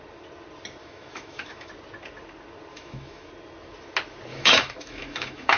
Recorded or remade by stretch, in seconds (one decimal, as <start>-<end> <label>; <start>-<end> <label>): 0.0-0.8 recorded; 0.8-1.7 remade; 1.7-2.7 recorded; 2.7-3.3 remade; 3.3-4.3 recorded; 4.3-5.6 remade